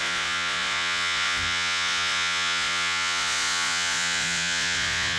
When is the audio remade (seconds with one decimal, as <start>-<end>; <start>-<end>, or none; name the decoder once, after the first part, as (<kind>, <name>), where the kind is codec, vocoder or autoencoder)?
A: 0.0-5.2 (vocoder, Vocos)